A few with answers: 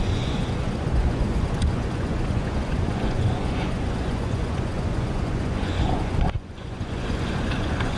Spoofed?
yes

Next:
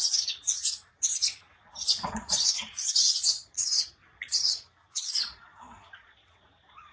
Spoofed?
yes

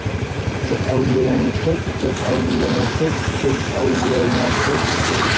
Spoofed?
yes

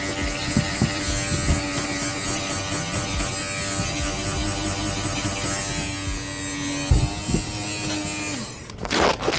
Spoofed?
no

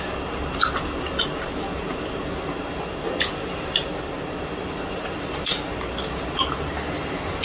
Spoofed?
no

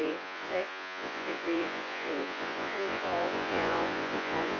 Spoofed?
yes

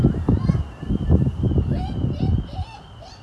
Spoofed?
no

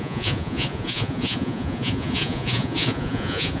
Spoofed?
yes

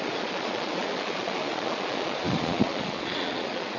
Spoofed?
yes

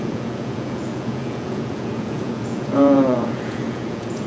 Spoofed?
yes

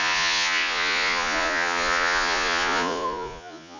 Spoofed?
yes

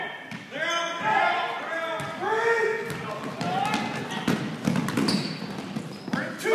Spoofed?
no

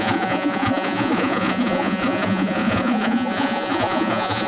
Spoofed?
yes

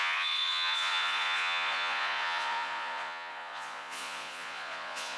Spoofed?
yes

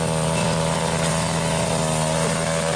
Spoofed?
no